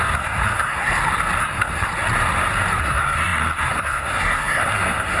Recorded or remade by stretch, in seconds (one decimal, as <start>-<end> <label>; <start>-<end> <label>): 0.0-0.9 remade; 0.9-1.4 recorded; 1.4-1.9 remade; 1.9-2.8 recorded; 2.8-5.2 remade